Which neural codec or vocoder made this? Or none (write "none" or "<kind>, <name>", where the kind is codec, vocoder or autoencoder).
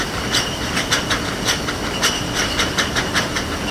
none